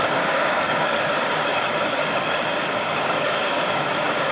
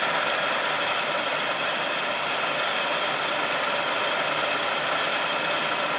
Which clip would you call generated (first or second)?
first